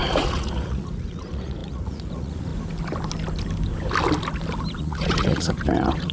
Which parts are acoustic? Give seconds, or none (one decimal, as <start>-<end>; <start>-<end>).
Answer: 2.5-4.8